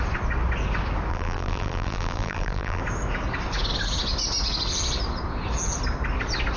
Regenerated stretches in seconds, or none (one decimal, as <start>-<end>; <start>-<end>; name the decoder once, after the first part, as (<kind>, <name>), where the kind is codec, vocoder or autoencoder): 1.1-2.8 (vocoder, BigVGAN v2)